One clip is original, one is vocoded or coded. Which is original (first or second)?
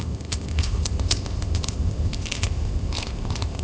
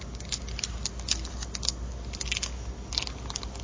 second